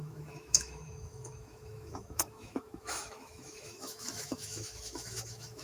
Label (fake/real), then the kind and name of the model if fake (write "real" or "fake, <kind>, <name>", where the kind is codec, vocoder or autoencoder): fake, autoencoder, DAC-VAE